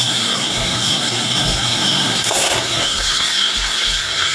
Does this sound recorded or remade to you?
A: remade